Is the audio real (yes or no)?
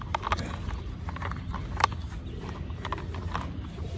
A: yes